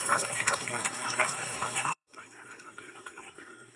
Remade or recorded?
remade